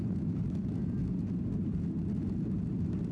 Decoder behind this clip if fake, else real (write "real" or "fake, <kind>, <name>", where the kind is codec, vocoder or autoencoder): real